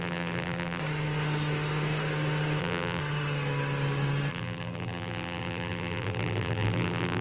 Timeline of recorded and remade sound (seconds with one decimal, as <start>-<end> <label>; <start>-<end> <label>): 0.0-0.8 remade; 0.8-2.6 recorded; 2.6-3.0 remade; 3.0-4.3 recorded; 4.3-7.2 remade